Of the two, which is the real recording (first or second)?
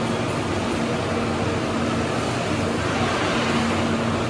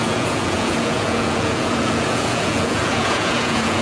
first